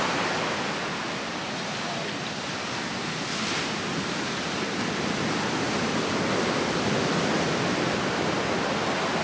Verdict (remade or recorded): recorded